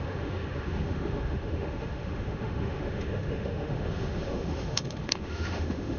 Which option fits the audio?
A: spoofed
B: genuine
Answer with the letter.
A